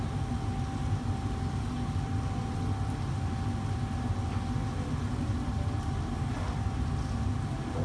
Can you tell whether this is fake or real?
real